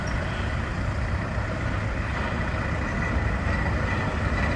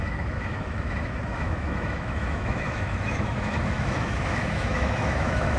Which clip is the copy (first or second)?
second